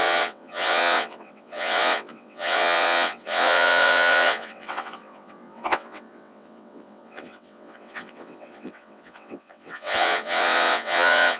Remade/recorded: remade